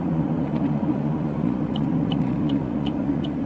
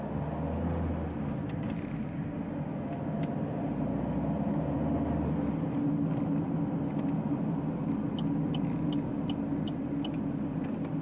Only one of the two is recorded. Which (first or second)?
second